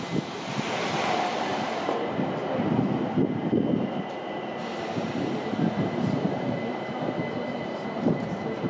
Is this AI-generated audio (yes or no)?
no